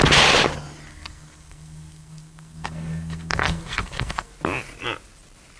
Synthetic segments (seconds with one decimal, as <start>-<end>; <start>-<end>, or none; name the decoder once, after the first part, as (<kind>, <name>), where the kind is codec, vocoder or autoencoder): 0.9-4.3 (codec, SNAC)

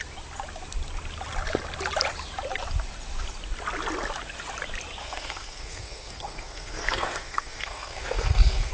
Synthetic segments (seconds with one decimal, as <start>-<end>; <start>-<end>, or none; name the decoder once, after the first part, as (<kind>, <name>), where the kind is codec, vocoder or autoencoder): 5.0-8.7 (codec, SNAC)

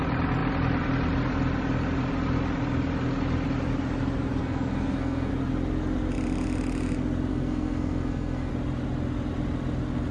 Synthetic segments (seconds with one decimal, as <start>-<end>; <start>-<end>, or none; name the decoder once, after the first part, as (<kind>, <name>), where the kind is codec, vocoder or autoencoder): 4.4-5.3 (codec, SNAC); 7.3-8.5

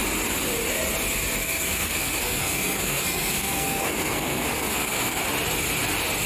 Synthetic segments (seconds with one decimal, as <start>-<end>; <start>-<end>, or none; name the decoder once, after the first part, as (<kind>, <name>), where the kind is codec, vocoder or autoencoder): 1.4-5.2 (codec, SNAC)

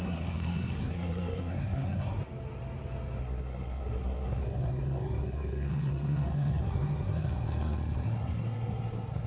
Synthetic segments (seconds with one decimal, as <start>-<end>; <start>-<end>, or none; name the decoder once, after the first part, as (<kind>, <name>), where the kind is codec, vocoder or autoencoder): 0.0-2.2 (codec, SNAC); 3.2-9.3

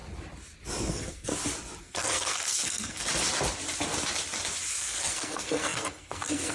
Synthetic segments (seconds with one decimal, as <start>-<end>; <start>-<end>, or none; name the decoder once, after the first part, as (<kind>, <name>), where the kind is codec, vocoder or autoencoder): 0.9-1.3 (codec, SNAC); 1.8-3.1; 4.7-6.5

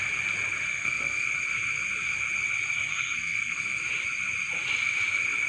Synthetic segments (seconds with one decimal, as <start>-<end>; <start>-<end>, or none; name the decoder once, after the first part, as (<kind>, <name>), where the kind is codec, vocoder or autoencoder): 0.7-1.3 (codec, SNAC); 2.9-3.8

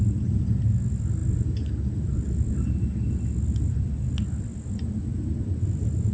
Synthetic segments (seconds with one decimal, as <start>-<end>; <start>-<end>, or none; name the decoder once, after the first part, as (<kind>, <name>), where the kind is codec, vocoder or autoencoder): none